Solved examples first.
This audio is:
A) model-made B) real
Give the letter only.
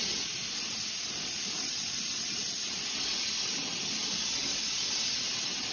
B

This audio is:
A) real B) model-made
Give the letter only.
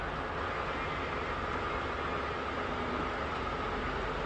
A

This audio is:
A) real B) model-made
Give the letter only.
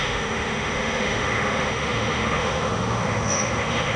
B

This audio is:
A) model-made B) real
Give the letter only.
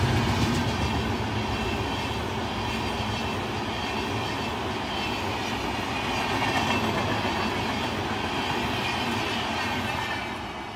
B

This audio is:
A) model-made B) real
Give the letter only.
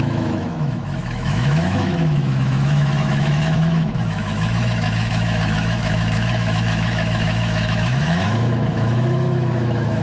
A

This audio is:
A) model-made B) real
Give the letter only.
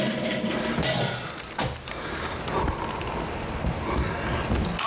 B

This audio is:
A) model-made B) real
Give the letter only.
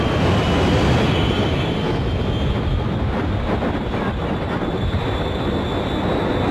B